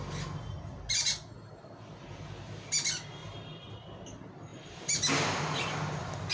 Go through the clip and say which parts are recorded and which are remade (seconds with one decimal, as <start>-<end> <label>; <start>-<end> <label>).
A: 0.0-3.2 recorded; 3.2-3.7 remade; 3.7-4.5 recorded; 4.5-5.7 remade; 5.7-6.3 recorded